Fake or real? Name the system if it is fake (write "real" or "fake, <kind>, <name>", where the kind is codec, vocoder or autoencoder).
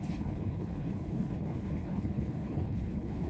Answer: fake, codec, HILCodec